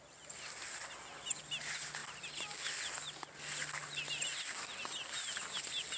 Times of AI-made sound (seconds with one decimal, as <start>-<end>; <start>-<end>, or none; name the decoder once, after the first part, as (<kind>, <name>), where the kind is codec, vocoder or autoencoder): none